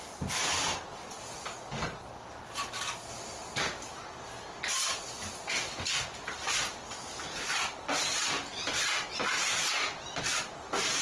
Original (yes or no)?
yes